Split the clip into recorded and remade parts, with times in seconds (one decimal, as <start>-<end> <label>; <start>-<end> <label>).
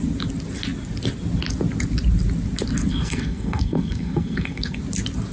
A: 0.0-2.9 recorded; 2.9-4.8 remade; 4.8-5.3 recorded